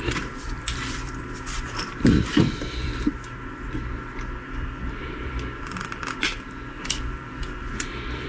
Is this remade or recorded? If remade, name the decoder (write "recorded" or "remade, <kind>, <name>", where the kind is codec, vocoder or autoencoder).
remade, vocoder, BigVGAN v2